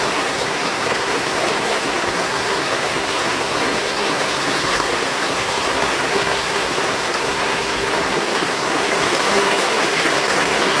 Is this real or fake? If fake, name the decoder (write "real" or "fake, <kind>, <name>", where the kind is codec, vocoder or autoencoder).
fake, codec, SNAC